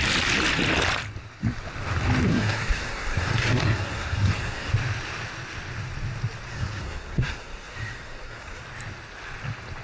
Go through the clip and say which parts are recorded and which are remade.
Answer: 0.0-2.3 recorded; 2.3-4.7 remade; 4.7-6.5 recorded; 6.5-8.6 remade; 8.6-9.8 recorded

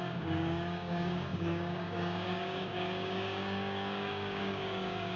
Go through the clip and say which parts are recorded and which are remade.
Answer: 0.0-5.2 remade

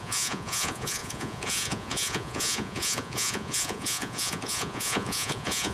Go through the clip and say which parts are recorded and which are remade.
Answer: 0.0-5.7 remade

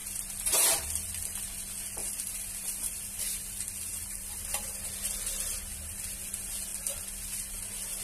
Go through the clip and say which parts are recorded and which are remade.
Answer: 0.0-2.0 recorded; 2.0-4.8 remade; 4.8-8.0 recorded

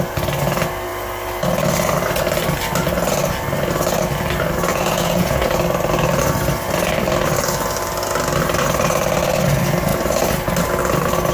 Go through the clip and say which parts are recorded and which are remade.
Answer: 0.0-4.7 recorded; 4.7-5.5 remade; 5.5-11.3 recorded

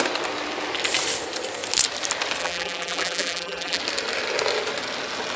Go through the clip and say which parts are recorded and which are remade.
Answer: 0.0-2.4 recorded; 2.4-3.8 remade; 3.8-5.4 recorded

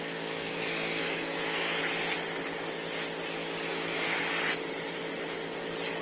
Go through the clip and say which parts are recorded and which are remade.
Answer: 0.0-1.8 remade; 1.8-3.7 recorded; 3.7-4.2 remade; 4.2-6.0 recorded

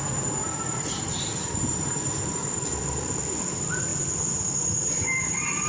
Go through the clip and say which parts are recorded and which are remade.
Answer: 0.0-2.4 remade; 2.4-3.5 recorded; 3.5-3.9 remade; 3.9-5.2 recorded; 5.2-5.7 remade